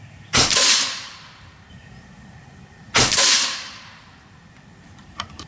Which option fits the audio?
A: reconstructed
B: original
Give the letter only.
A